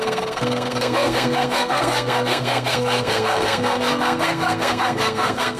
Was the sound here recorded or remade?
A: remade